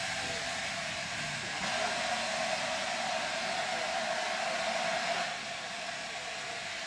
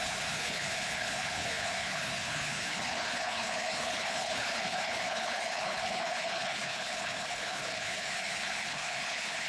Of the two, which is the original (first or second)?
first